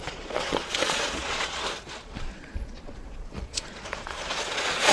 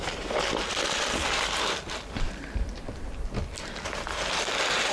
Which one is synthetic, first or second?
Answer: first